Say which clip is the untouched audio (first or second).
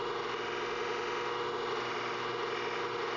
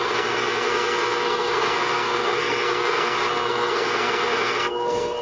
first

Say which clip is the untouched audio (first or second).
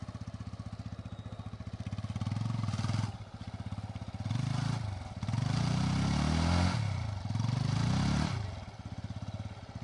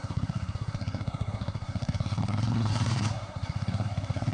first